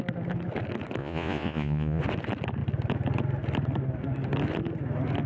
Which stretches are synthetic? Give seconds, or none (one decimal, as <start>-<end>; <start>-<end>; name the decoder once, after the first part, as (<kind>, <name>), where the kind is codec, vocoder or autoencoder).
1.0-2.0 (vocoder, Vocos)